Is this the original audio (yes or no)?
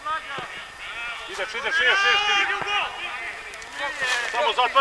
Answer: yes